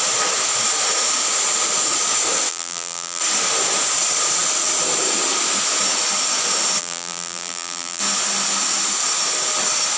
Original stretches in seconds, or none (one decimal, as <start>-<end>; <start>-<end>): 0.0-2.5; 3.2-6.8; 8.0-10.0

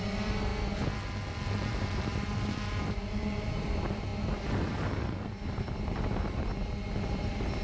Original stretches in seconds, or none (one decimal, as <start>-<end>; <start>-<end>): 0.5-1.7; 6.5-7.1

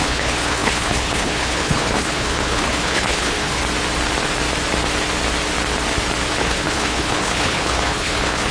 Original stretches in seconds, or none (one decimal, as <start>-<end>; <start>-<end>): 3.6-6.4

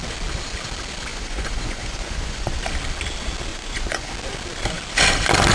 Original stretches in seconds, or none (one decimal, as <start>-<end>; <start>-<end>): 0.0-1.1; 2.6-3.5; 4.1-5.5

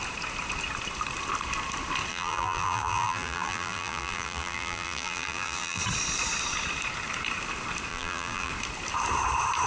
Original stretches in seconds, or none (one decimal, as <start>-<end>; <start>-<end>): 0.0-2.1; 5.8-7.9; 8.5-9.7